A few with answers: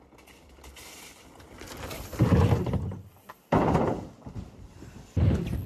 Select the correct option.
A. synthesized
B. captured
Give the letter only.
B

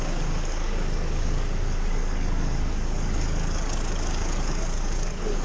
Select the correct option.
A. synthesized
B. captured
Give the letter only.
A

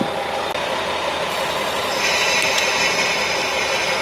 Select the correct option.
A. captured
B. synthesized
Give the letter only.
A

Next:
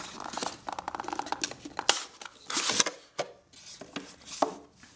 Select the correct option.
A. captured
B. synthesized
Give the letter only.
A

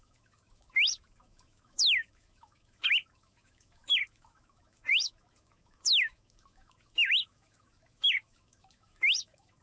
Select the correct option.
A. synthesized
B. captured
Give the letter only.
A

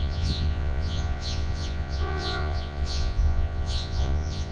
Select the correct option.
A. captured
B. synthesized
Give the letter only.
B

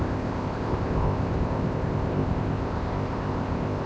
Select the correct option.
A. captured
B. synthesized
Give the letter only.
B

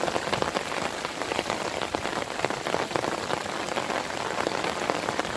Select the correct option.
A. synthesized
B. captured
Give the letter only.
B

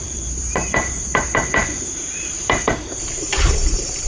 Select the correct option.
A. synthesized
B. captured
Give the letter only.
A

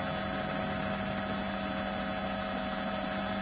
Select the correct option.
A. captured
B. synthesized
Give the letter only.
A